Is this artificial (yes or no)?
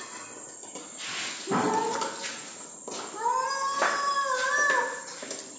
no